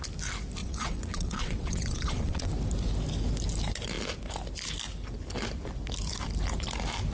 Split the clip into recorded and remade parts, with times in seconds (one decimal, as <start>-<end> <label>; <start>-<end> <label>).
0.0-0.6 recorded; 0.6-2.5 remade; 2.5-7.1 recorded